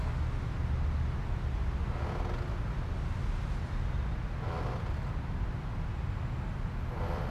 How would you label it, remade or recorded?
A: recorded